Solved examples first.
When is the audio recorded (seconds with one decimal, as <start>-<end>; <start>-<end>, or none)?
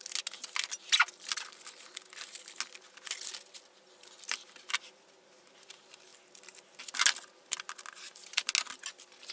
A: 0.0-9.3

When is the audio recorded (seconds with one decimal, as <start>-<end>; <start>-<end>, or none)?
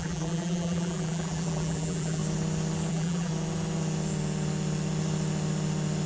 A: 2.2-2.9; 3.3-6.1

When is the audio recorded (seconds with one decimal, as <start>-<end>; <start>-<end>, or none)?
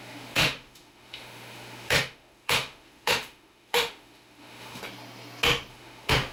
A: 4.8-5.7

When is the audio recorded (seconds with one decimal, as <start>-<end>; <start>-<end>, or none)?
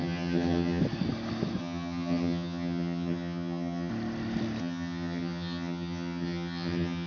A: 0.8-1.6; 3.9-4.6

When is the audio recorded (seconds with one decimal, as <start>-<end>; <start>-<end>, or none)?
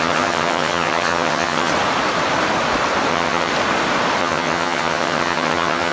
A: 1.7-3.1; 3.5-4.2